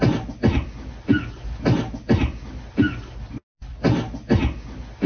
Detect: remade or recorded recorded